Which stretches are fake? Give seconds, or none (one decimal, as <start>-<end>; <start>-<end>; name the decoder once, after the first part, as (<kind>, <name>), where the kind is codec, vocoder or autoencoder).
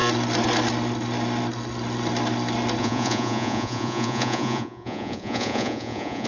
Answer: 2.8-6.3 (vocoder, Vocos)